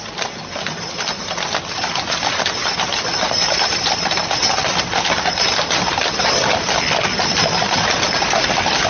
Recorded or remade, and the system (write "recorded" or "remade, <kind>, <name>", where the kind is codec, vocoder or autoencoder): recorded